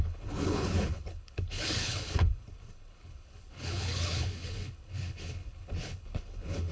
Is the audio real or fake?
fake